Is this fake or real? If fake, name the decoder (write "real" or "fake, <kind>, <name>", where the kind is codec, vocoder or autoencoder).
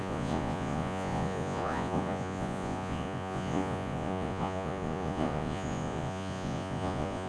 fake, vocoder, Vocos